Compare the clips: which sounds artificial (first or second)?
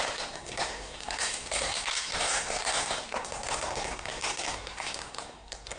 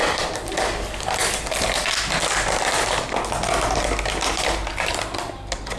first